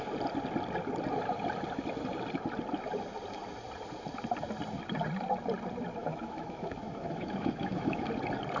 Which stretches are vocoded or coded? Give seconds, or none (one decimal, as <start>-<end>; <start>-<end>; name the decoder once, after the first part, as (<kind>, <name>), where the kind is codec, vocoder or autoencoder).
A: 6.0-8.1 (autoencoder, DAC-VAE)